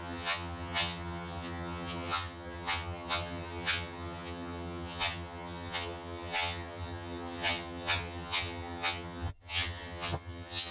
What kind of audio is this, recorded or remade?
remade